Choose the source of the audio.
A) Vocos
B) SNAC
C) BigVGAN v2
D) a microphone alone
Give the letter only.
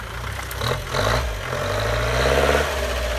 D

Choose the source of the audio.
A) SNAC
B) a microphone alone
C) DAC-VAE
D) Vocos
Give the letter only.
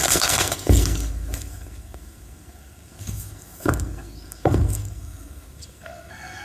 A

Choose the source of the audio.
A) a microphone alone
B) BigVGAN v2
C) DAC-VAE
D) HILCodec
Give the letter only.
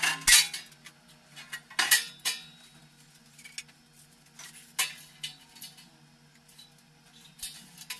A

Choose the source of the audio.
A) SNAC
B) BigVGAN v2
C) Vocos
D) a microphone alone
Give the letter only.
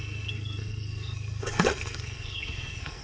A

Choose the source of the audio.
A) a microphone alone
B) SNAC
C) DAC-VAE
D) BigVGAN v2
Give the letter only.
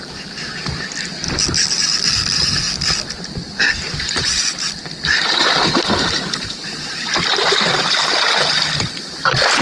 D